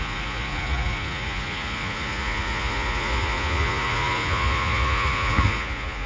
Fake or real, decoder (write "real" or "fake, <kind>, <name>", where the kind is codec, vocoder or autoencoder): fake, vocoder, Vocos